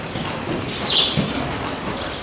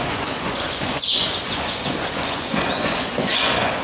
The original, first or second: first